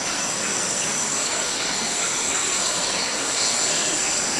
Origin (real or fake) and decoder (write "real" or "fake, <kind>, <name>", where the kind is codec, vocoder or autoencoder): fake, codec, SNAC